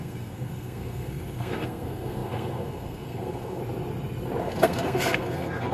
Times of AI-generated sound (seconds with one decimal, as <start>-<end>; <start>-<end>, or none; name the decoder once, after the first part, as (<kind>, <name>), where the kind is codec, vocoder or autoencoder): 0.0-3.6 (codec, SNAC); 4.4-5.7